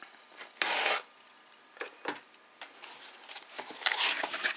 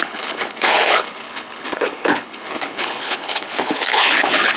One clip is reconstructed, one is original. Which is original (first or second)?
first